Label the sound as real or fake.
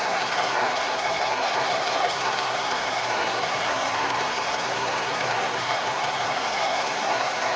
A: fake